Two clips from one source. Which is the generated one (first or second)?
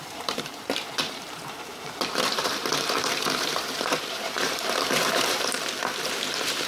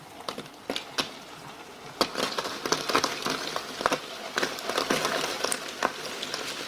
first